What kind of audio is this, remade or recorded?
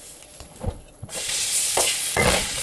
remade